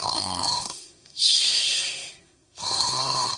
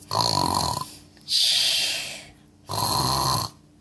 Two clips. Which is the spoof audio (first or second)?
first